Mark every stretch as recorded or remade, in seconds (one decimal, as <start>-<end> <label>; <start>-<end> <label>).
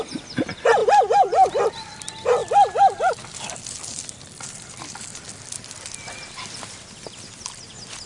0.0-0.8 recorded; 0.8-1.5 remade; 1.5-8.1 recorded